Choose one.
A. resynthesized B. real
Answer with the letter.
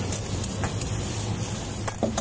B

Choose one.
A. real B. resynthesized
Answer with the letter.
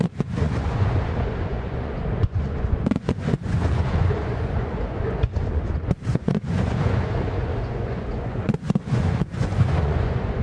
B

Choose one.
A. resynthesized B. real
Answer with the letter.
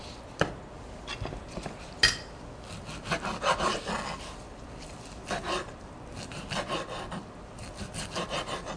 B